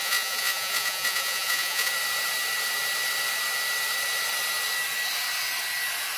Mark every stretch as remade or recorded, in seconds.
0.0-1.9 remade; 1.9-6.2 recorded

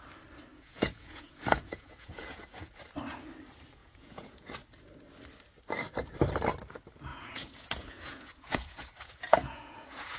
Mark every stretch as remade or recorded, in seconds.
0.0-0.5 recorded; 0.5-2.8 remade; 2.8-3.8 recorded; 3.8-4.5 remade; 4.5-7.1 recorded; 7.1-10.2 remade

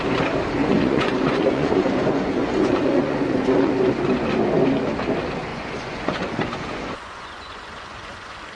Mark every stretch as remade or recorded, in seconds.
0.0-0.6 recorded; 0.6-3.7 remade; 3.7-5.5 recorded; 5.5-8.6 remade

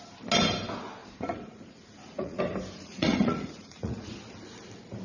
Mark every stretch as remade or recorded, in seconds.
0.0-1.0 recorded; 1.0-2.4 remade; 2.4-2.8 recorded; 2.8-4.1 remade; 4.1-5.0 recorded

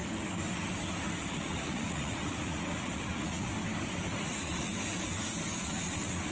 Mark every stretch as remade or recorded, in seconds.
0.0-1.3 recorded; 1.3-3.5 remade; 3.5-4.2 recorded; 4.2-4.7 remade; 4.7-5.6 recorded; 5.6-6.3 remade

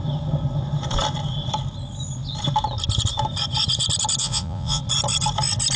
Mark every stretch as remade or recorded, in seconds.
0.0-4.2 recorded; 4.2-4.8 remade; 4.8-5.8 recorded

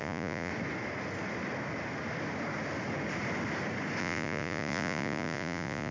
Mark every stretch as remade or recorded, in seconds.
0.0-0.5 remade; 0.5-4.0 recorded; 4.0-5.9 remade

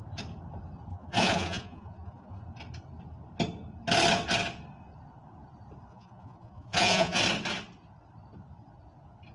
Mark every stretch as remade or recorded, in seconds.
0.0-0.9 recorded; 0.9-2.4 remade; 2.4-5.9 recorded; 5.9-7.2 remade; 7.2-9.3 recorded